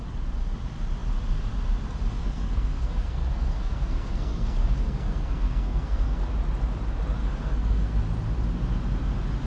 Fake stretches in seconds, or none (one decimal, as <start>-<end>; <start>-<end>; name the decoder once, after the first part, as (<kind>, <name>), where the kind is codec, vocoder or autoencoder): 2.2-6.2 (codec, SNAC); 7.2-8.0